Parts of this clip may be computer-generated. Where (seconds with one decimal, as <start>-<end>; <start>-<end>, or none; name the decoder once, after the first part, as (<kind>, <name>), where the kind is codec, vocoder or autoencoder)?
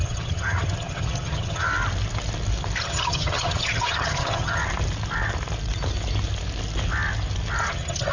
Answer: 0.0-1.7 (vocoder, HiFi-GAN); 2.8-4.6; 7.6-8.1